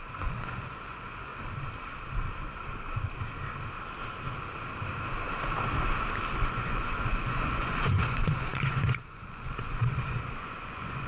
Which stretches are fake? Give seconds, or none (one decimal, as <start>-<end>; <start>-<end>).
0.0-1.3; 6.5-11.1